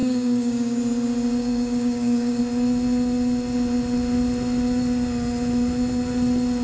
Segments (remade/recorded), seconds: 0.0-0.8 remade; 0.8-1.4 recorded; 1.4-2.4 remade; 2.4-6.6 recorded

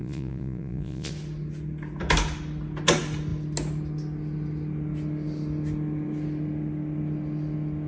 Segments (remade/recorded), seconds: 0.0-1.1 remade; 1.1-7.9 recorded

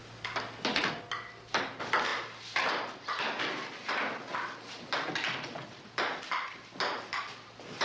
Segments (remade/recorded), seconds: 0.0-7.8 recorded

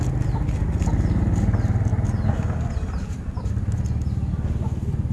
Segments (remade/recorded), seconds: 0.0-5.1 recorded

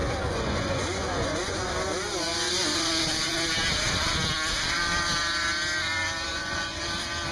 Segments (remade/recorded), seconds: 0.0-1.7 remade; 1.7-6.3 recorded; 6.3-6.8 remade; 6.8-7.3 recorded

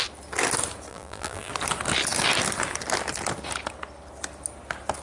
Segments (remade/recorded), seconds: 0.0-0.9 recorded; 0.9-1.5 remade; 1.5-5.0 recorded

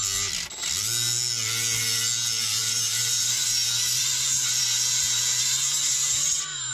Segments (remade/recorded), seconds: 0.0-2.6 recorded; 2.6-6.7 remade